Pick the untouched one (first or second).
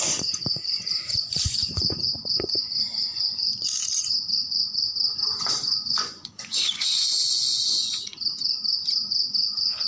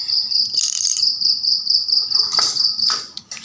second